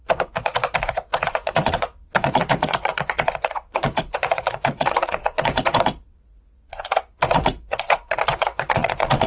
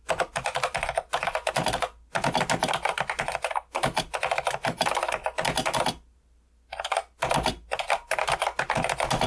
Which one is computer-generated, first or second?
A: first